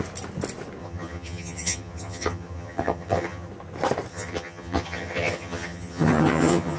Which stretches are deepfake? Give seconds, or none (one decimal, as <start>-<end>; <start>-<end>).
0.8-3.5; 4.1-6.8

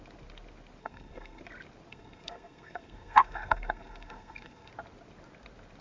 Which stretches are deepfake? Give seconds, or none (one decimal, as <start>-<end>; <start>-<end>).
0.8-1.4; 1.9-4.7